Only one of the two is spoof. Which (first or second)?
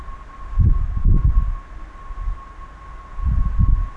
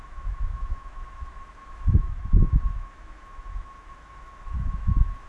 second